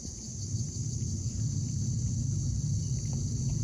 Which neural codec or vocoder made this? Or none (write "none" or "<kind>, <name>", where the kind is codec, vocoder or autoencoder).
none